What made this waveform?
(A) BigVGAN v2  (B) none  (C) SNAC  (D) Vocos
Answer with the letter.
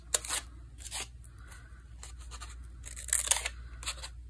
B